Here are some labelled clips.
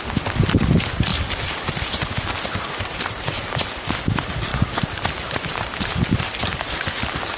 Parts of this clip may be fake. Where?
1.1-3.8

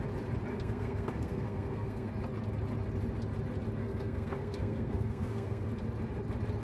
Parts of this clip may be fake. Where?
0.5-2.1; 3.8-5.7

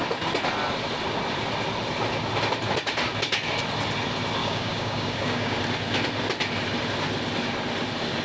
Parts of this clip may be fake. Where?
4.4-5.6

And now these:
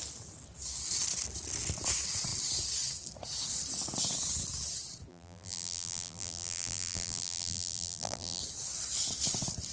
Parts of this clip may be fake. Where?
5.1-8.4

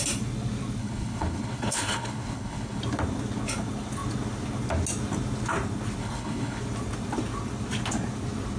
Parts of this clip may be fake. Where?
0.8-2.8; 6.0-6.6